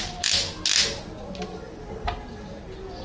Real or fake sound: real